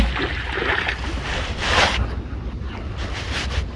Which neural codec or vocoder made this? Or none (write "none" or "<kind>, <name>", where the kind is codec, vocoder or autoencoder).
none